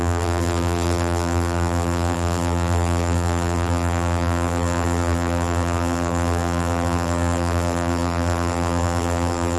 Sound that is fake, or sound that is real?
fake